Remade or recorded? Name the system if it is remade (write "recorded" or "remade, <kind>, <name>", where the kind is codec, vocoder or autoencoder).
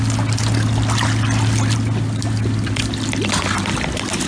recorded